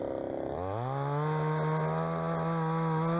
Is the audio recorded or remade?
recorded